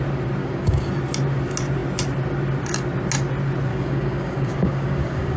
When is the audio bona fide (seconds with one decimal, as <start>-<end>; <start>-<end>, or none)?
0.0-0.4; 0.9-3.7